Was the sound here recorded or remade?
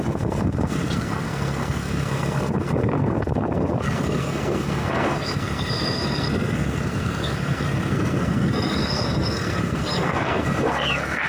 remade